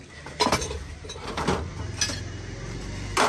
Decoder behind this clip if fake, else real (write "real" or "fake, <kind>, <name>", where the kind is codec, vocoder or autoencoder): real